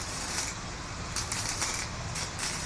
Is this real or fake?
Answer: fake